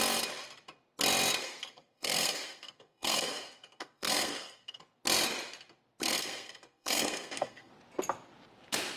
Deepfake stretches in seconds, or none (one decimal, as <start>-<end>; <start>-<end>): 1.4-4.8; 6.0-7.7